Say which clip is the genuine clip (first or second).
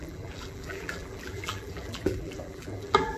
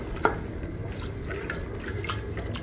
second